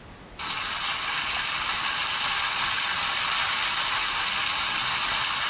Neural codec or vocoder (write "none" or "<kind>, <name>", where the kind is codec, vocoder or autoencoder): none